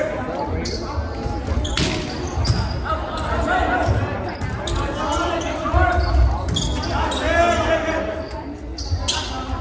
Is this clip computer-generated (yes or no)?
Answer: no